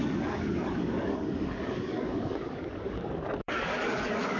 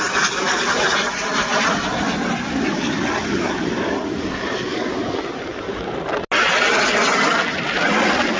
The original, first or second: second